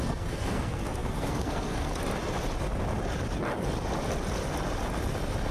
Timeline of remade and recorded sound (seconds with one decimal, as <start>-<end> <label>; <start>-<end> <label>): 0.0-1.9 remade; 1.9-5.5 recorded

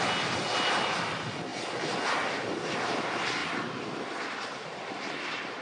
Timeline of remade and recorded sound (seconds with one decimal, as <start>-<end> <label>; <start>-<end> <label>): 0.0-5.6 recorded

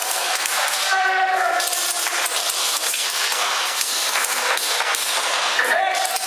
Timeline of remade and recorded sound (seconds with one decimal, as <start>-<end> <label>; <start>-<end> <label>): 0.0-1.5 remade; 1.5-2.6 recorded; 2.6-5.8 remade; 5.8-6.3 recorded

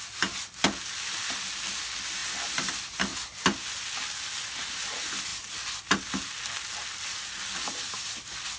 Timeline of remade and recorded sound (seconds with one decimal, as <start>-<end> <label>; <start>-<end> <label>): 0.0-8.6 recorded

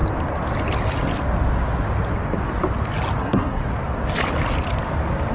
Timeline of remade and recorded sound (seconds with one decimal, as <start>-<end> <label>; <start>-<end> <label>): 0.0-3.2 recorded; 3.2-3.6 remade; 3.6-5.3 recorded